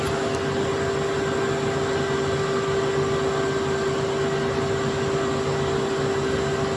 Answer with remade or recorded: recorded